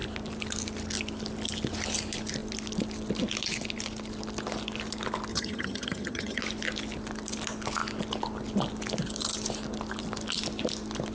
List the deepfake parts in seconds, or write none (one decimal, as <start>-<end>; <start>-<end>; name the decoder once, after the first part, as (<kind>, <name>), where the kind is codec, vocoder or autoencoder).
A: 5.3-6.4 (vocoder, HiFi-GAN)